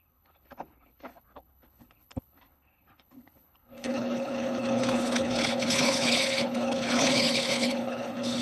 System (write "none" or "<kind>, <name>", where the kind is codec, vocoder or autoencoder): codec, HILCodec